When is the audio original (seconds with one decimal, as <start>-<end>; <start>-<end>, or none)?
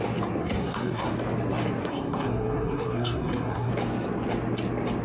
0.0-0.4; 1.1-1.9; 3.7-5.0